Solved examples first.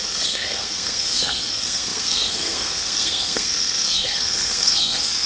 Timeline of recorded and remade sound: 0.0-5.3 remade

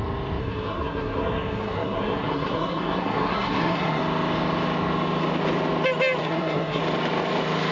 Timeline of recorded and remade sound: 0.0-0.4 recorded; 0.4-4.0 remade; 4.0-6.2 recorded; 6.2-6.8 remade; 6.8-7.7 recorded

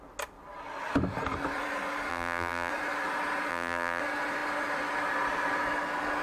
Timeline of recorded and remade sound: 0.0-2.1 recorded; 2.1-2.7 remade; 2.7-3.5 recorded; 3.5-4.0 remade; 4.0-6.2 recorded

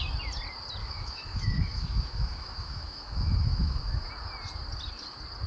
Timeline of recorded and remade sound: 0.0-0.8 recorded; 0.8-4.1 remade; 4.1-5.5 recorded

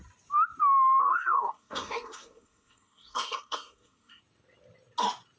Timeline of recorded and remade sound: 0.0-1.0 recorded; 1.0-4.2 remade; 4.2-5.4 recorded

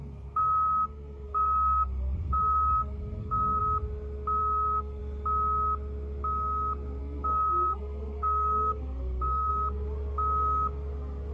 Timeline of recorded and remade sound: 0.0-3.6 remade; 3.6-4.4 recorded; 4.4-5.0 remade; 5.0-7.0 recorded; 7.0-9.5 remade; 9.5-11.3 recorded

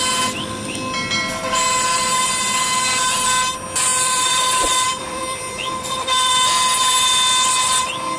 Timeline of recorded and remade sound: 0.0-3.9 recorded; 3.9-6.3 remade; 6.3-8.2 recorded

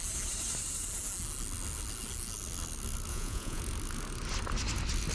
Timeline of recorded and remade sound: 0.0-3.1 recorded; 3.1-3.6 remade; 3.6-5.1 recorded